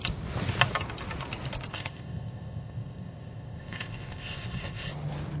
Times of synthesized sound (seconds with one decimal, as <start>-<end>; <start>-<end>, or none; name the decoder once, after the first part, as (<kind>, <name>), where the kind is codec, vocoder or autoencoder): 1.7-4.9 (codec, ZipCodec)